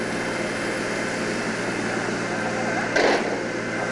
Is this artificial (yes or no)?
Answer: no